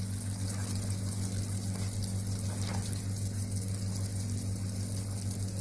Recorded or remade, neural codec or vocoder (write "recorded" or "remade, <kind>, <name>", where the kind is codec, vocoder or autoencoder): recorded